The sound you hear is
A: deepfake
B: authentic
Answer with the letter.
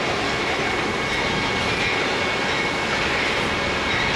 B